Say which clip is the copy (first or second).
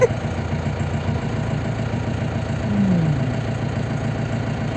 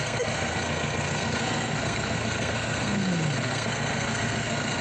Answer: second